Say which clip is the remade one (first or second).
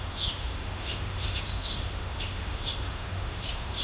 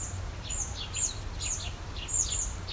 first